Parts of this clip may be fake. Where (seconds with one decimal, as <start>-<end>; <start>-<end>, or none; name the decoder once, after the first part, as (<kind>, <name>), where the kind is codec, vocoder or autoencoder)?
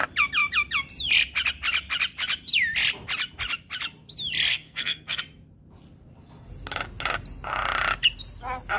4.5-5.2 (codec, SNAC)